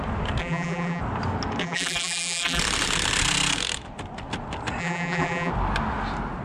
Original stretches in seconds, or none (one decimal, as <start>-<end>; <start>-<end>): 0.0-0.4; 1.0-1.6; 2.6-4.8; 5.5-6.4